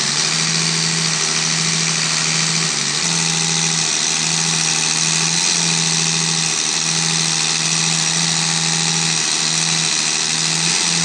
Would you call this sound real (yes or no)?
yes